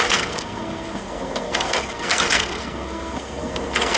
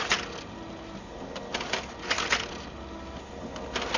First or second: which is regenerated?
first